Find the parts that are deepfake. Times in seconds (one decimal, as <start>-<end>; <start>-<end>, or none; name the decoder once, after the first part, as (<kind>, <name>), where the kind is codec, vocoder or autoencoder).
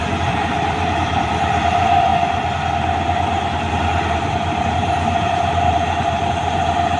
0.0-2.1 (vocoder, BigVGAN v2); 4.1-7.0